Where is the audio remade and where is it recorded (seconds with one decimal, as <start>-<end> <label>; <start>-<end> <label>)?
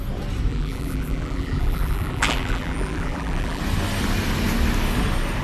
0.0-0.5 recorded; 0.5-3.6 remade; 3.6-5.4 recorded